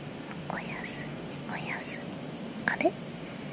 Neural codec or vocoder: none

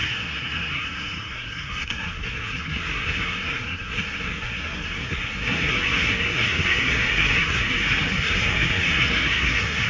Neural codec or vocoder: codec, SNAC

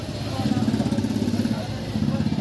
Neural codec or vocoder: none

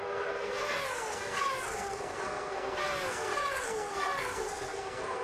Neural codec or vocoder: codec, SNAC